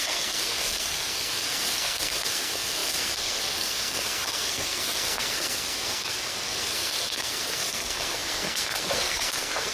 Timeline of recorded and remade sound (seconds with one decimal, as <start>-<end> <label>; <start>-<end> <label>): 0.0-9.7 remade